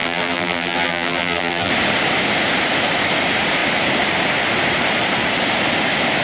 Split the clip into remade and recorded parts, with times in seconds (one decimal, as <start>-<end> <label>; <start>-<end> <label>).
0.0-1.7 remade; 1.7-6.2 recorded